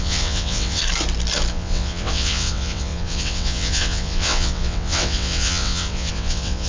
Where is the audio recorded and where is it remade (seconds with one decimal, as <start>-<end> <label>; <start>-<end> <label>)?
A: 0.0-0.8 remade; 0.8-1.5 recorded; 1.5-6.7 remade